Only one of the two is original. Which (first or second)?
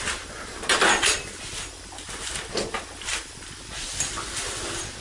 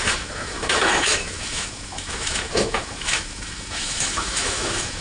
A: first